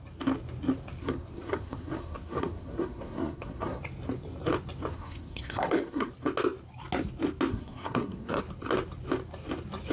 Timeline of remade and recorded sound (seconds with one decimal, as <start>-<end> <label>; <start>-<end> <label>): 0.0-1.0 recorded; 1.0-3.8 remade; 3.8-4.9 recorded; 4.9-6.1 remade; 6.1-7.5 recorded; 7.5-8.4 remade; 8.4-9.9 recorded

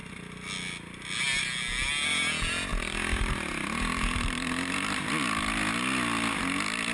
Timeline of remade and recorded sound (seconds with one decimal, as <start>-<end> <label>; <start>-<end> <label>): 0.0-6.9 recorded